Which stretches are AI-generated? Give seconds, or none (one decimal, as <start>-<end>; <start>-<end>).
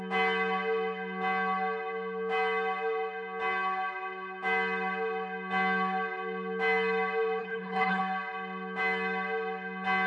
7.4-8.0